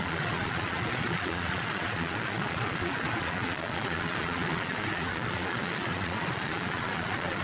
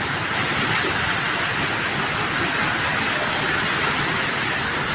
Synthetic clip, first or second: first